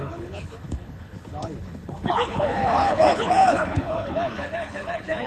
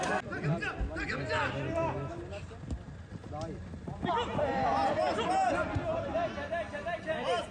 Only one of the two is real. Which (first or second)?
second